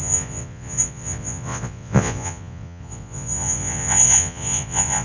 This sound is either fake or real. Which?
fake